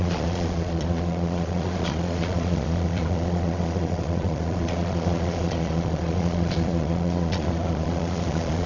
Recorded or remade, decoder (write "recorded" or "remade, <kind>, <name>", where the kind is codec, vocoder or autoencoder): remade, vocoder, Vocos